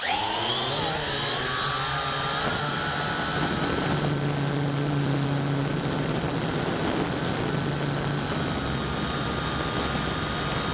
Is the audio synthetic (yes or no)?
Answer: no